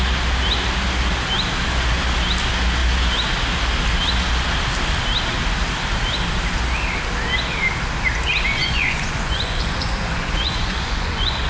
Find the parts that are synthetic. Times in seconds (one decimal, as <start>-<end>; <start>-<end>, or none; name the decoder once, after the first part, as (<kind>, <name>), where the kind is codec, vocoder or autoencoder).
8.6-11.5 (vocoder, Vocos)